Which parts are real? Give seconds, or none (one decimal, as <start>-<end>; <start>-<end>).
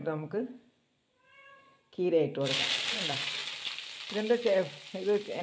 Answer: 1.7-2.9; 3.4-5.4